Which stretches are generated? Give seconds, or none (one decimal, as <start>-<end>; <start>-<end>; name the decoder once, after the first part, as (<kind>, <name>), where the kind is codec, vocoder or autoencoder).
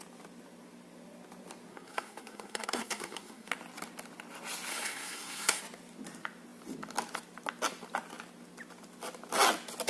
1.7-3.5 (codec, SNAC); 4.7-5.6